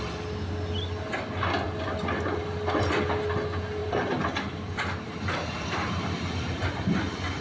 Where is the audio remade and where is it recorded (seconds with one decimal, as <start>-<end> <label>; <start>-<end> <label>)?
0.0-3.8 recorded; 3.8-7.0 remade; 7.0-7.4 recorded